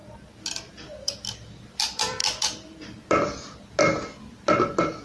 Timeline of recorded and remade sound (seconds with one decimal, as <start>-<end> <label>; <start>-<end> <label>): 0.0-2.2 remade; 2.2-4.6 recorded; 4.6-5.0 remade

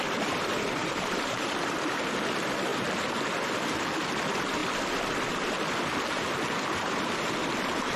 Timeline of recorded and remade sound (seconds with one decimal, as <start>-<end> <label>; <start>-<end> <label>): 0.0-0.8 recorded; 0.8-2.1 remade; 2.1-2.7 recorded; 2.7-3.4 remade; 3.4-8.0 recorded

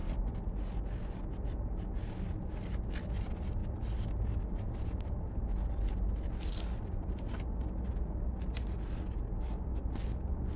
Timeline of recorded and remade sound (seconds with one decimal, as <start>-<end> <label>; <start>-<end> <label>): 0.0-10.6 recorded

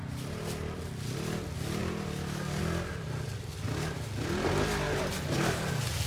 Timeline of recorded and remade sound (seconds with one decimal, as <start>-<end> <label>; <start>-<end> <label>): 0.0-6.1 recorded

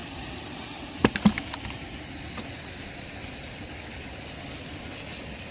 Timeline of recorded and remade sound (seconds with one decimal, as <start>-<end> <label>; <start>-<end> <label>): 0.0-1.2 remade; 1.2-5.5 recorded

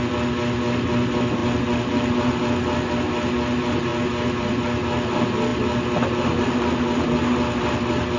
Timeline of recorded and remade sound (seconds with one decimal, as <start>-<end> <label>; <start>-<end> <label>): 0.0-8.2 recorded